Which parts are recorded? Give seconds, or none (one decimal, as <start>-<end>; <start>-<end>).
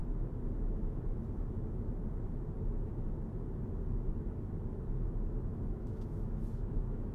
0.0-5.5